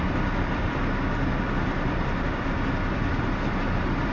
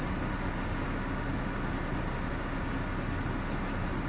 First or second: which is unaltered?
second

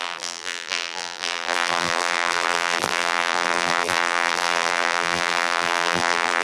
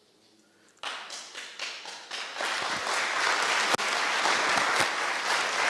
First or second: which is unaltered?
second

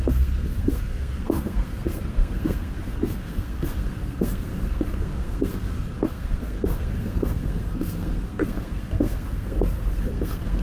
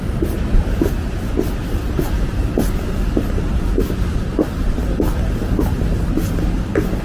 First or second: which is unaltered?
second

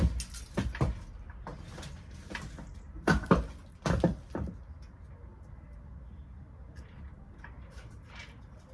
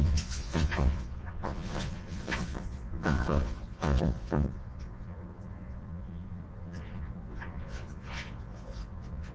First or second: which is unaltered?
first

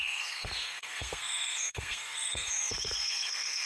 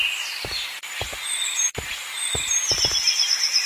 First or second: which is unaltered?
second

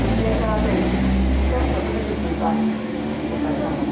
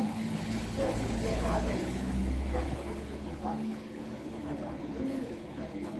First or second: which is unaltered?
first